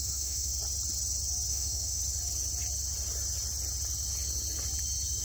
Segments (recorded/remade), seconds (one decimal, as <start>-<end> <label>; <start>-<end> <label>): 0.0-0.5 remade; 0.5-1.5 recorded; 1.5-2.0 remade; 2.0-5.2 recorded